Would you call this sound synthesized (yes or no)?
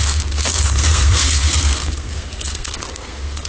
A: yes